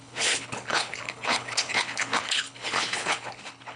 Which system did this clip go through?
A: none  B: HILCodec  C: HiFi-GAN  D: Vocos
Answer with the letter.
B